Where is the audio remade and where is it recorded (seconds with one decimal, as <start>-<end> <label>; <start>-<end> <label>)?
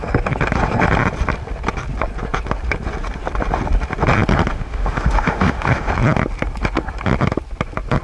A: 0.0-4.5 recorded; 4.5-5.9 remade; 5.9-8.0 recorded